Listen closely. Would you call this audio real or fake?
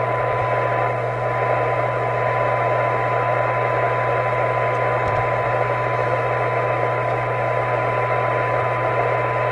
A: real